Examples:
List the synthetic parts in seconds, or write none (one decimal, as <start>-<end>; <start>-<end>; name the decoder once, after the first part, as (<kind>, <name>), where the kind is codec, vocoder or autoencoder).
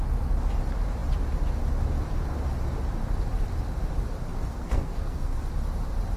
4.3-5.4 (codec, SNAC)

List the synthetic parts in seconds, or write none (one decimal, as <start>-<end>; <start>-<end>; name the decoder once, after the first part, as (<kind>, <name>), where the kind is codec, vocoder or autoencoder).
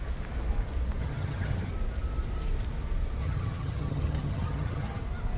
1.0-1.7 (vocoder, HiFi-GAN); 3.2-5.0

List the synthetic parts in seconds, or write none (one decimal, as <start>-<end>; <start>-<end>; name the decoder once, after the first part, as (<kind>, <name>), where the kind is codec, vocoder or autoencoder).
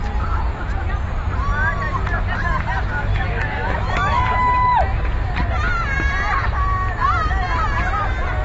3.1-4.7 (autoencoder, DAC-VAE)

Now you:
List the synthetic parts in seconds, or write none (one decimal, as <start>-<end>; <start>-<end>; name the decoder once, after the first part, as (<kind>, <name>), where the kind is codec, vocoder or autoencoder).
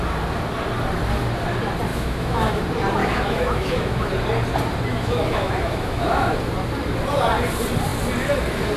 1.9-2.6 (autoencoder, DAC-VAE); 3.0-4.1; 4.9-6.4